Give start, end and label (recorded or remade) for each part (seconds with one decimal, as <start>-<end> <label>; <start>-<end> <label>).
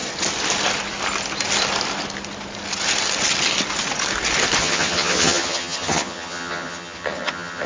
0.0-4.6 recorded; 4.6-7.7 remade